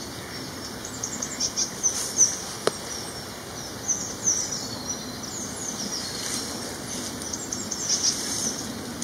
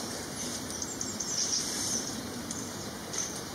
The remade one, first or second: second